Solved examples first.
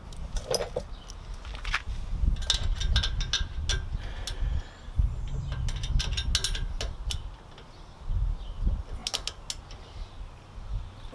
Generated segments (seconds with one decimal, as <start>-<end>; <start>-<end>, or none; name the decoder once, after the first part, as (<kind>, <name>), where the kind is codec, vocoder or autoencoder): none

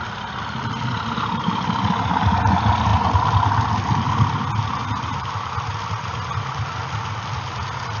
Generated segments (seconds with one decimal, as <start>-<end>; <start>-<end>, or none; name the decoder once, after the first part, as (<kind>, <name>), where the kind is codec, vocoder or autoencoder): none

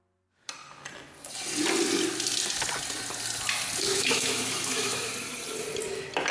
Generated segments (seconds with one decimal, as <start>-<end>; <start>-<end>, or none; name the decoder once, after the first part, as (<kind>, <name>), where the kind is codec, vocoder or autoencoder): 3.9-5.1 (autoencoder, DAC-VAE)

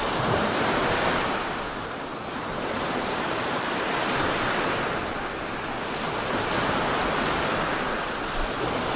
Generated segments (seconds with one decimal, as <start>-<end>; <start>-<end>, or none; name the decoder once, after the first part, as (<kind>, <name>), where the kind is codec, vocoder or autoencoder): none

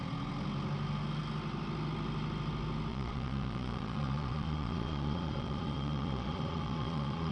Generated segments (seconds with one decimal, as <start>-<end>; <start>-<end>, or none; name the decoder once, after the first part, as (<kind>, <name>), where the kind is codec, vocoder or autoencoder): 2.9-7.3 (vocoder, Vocos)

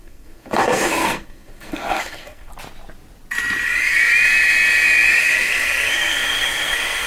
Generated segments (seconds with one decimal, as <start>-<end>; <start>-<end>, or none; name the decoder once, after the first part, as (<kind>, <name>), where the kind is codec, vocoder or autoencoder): 0.0-2.5 (codec, SNAC); 5.2-7.1

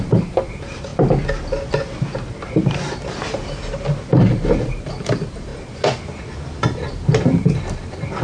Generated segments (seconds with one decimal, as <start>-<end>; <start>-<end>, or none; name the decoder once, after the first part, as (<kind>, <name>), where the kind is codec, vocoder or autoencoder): 0.0-0.9 (vocoder, BigVGAN v2); 4.1-5.5; 6.6-8.2

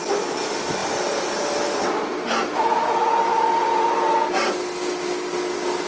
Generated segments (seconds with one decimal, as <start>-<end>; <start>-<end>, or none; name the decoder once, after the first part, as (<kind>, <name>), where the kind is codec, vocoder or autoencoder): none